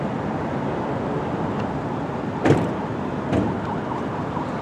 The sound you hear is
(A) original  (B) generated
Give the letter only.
A